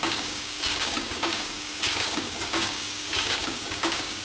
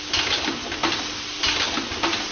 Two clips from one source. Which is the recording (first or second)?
second